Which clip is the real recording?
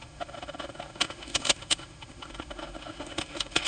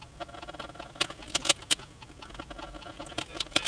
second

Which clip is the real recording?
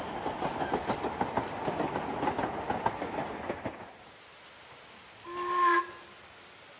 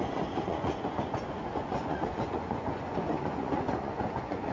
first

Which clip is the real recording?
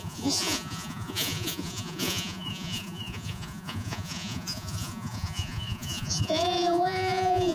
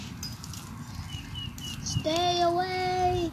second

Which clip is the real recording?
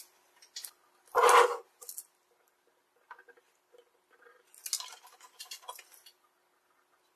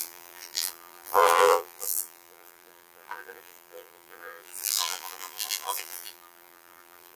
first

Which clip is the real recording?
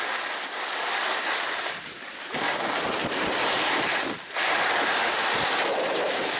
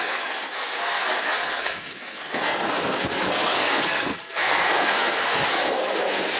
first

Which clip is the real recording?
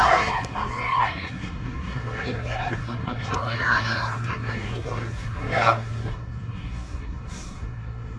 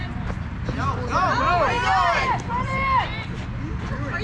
second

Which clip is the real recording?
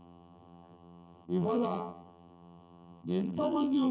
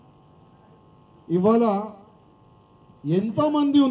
second